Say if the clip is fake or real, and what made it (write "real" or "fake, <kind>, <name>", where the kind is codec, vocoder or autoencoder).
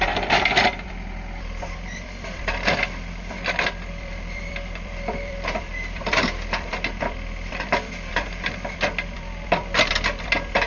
fake, vocoder, BigVGAN v2